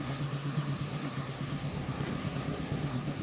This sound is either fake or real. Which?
fake